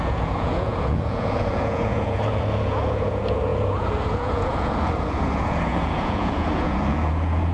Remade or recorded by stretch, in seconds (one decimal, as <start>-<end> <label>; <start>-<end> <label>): 0.0-7.5 remade